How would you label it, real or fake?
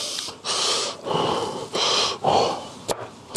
real